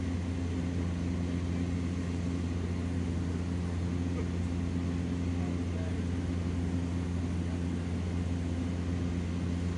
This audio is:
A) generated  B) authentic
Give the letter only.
B